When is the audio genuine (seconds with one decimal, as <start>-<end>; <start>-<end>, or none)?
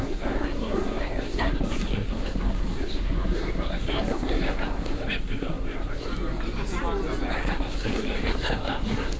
6.1-7.3